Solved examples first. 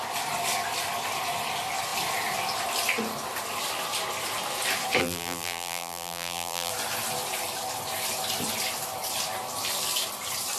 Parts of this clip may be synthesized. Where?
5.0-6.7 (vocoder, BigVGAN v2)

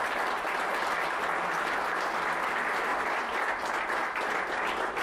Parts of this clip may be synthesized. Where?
2.9-3.8 (vocoder, BigVGAN v2)

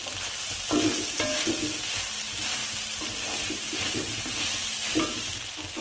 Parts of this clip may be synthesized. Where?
none

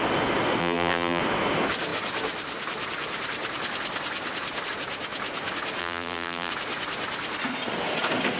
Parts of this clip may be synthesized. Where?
0.6-1.2 (vocoder, BigVGAN v2); 5.8-6.5

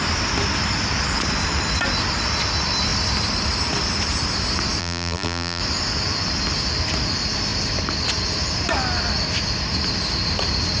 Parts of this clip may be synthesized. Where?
4.8-5.6 (vocoder, BigVGAN v2)

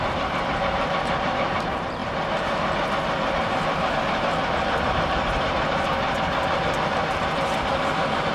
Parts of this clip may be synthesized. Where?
0.0-2.0 (vocoder, BigVGAN v2); 3.9-5.9